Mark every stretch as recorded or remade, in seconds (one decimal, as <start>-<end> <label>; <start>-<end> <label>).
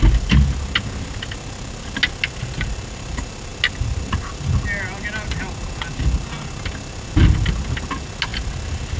0.0-9.0 recorded